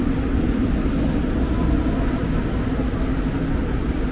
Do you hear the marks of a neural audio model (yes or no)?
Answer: no